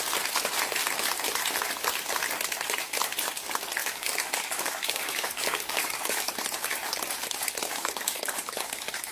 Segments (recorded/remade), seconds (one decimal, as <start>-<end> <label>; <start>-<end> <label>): 0.0-3.8 recorded; 3.8-6.3 remade; 6.3-7.7 recorded; 7.7-9.1 remade

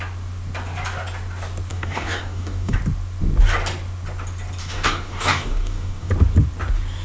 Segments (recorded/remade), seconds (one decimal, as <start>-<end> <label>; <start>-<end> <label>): 0.0-1.7 recorded; 1.7-2.8 remade; 2.8-4.6 recorded; 4.6-6.1 remade; 6.1-7.0 recorded

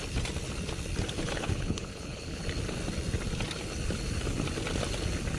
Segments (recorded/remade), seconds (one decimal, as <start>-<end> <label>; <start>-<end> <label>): 0.0-1.2 recorded; 1.2-2.4 remade; 2.4-5.4 recorded